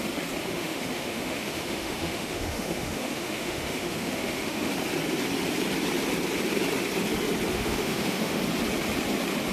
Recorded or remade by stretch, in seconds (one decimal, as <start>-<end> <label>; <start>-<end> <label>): 0.0-0.4 recorded; 0.4-4.7 remade; 4.7-7.5 recorded; 7.5-8.4 remade; 8.4-9.5 recorded